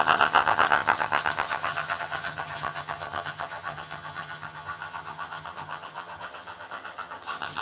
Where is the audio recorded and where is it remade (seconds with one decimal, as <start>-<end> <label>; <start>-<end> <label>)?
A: 0.0-7.6 remade